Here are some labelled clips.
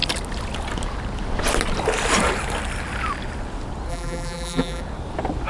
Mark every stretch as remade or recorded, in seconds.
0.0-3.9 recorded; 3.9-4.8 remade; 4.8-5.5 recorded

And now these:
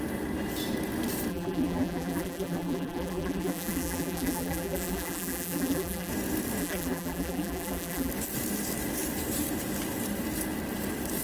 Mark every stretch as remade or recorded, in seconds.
0.0-1.3 recorded; 1.3-6.1 remade; 6.1-6.6 recorded; 6.6-8.1 remade; 8.1-11.2 recorded

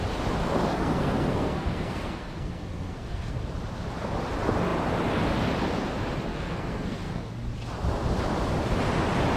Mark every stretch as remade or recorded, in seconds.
0.0-0.7 recorded; 0.7-3.4 remade; 3.4-6.3 recorded; 6.3-7.3 remade; 7.3-9.4 recorded

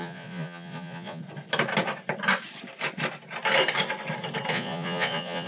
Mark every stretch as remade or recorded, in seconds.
0.0-1.2 remade; 1.2-4.5 recorded; 4.5-5.5 remade

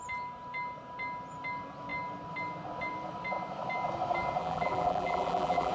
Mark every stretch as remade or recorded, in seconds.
0.0-4.4 recorded; 4.4-5.7 remade

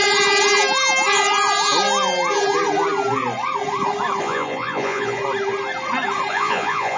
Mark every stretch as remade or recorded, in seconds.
0.0-4.2 recorded; 4.2-5.2 remade; 5.2-6.3 recorded; 6.3-7.0 remade